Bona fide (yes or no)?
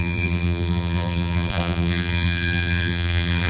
no